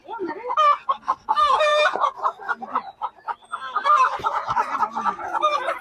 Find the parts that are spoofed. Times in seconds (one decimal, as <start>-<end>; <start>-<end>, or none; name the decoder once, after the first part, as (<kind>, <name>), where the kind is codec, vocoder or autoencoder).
none